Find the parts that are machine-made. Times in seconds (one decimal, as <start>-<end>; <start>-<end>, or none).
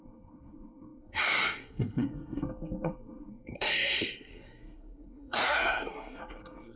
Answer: 0.0-6.8